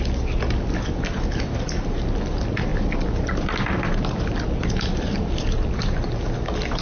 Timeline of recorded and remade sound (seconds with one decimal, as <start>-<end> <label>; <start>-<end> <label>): 0.0-2.7 recorded; 2.7-5.7 remade; 5.7-6.8 recorded